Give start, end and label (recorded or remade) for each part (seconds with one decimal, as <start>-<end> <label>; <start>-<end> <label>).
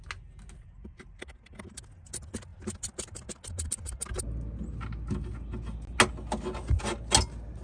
0.0-7.6 recorded